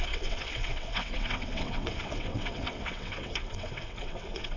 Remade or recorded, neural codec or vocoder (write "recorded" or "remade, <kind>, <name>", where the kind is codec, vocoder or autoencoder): remade, vocoder, WaveNeXt